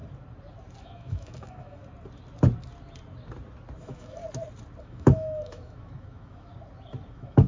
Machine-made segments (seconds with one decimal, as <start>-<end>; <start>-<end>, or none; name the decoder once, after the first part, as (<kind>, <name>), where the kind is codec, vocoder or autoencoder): 0.8-1.8 (autoencoder, DAC-VAE); 3.8-4.2; 4.8-6.5; 7.1-7.5